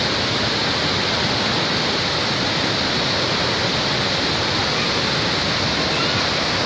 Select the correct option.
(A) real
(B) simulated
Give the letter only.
A